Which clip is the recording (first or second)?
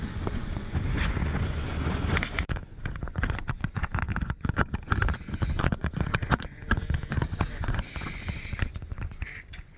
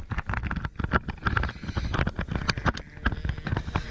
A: second